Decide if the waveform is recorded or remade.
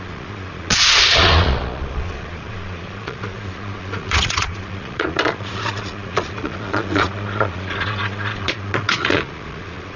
remade